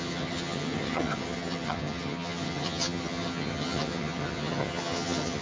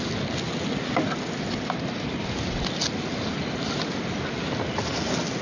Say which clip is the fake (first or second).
first